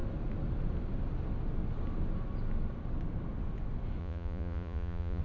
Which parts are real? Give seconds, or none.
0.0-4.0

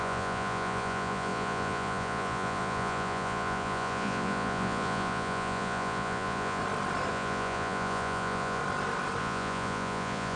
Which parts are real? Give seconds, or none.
6.6-7.1; 8.6-9.2

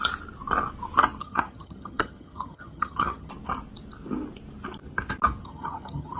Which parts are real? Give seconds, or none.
0.0-1.2; 3.3-5.4

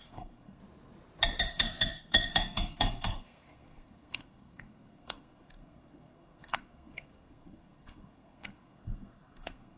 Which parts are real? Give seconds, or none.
0.6-1.4

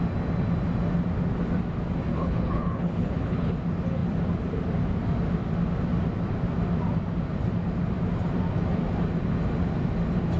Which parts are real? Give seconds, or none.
0.0-2.1; 3.5-10.4

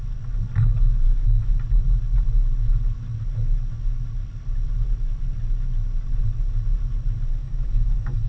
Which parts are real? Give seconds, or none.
0.0-7.4

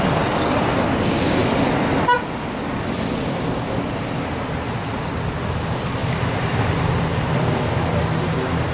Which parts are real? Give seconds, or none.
0.0-1.4; 3.4-6.0; 7.6-8.7